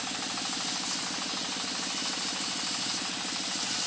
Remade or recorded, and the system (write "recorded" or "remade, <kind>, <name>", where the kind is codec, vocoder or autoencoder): recorded